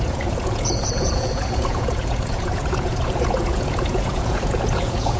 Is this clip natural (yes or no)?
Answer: no